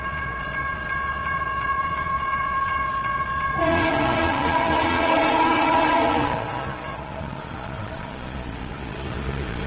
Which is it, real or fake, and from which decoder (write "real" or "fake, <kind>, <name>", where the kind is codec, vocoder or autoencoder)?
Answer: fake, vocoder, Vocos